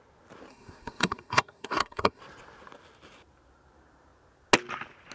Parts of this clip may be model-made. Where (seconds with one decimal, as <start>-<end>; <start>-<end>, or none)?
0.5-2.2